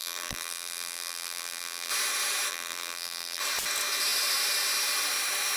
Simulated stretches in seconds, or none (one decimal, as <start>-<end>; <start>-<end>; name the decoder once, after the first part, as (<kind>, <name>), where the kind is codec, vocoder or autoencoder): 0.0-1.9 (vocoder, BigVGAN v2); 2.5-3.4